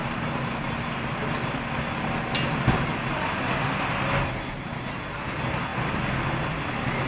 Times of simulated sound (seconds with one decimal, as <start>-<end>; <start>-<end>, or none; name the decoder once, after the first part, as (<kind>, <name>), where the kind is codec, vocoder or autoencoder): none